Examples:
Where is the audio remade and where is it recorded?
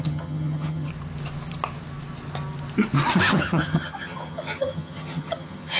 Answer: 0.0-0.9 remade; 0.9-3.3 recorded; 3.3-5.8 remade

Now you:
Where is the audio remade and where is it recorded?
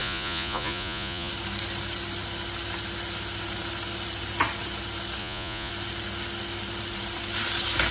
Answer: 0.0-1.3 remade; 1.3-5.2 recorded; 5.2-5.7 remade; 5.7-7.9 recorded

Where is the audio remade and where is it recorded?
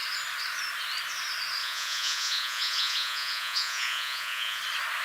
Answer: 0.0-1.6 recorded; 1.6-4.6 remade; 4.6-5.0 recorded